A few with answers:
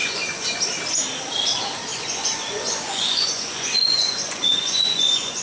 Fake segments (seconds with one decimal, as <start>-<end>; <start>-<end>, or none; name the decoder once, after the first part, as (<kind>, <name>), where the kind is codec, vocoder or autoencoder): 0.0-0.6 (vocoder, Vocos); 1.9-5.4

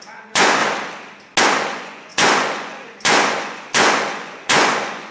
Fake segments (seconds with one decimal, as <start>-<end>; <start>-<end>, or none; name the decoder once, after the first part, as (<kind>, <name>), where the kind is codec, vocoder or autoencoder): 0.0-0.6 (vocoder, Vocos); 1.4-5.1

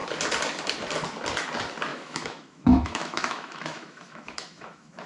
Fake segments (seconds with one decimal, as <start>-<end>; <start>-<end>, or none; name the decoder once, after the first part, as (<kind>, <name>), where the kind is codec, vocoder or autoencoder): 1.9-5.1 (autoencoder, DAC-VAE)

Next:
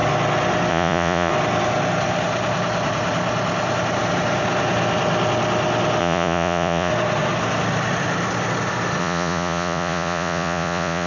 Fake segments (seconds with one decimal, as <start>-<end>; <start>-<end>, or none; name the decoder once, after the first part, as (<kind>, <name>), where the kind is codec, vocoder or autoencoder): 0.7-1.3 (vocoder, Vocos); 6.0-6.9; 9.0-11.1

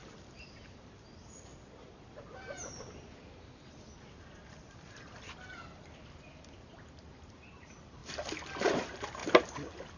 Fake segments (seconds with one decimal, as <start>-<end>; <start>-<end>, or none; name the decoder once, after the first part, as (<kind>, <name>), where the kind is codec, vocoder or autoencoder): 0.0-1.5 (vocoder, BigVGAN v2); 6.7-8.0; 8.6-9.2

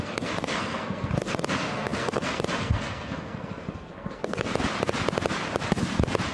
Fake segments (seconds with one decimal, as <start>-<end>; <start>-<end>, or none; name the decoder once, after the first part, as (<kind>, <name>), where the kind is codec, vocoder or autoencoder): 0.0-4.5 (codec, SNAC)

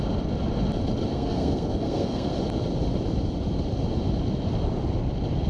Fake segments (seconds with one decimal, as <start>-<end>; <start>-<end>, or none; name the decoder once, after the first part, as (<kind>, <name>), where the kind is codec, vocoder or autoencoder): 1.1-2.3 (codec, SNAC)

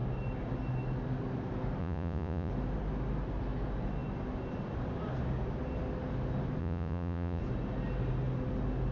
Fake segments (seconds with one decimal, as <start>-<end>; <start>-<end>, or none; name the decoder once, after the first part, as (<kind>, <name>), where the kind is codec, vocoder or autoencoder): 1.8-2.5 (vocoder, Vocos); 6.6-7.4